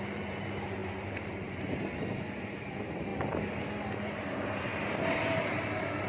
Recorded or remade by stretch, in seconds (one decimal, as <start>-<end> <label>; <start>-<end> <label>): 0.0-3.1 remade; 3.1-3.8 recorded; 3.8-4.7 remade; 4.7-5.2 recorded; 5.2-6.1 remade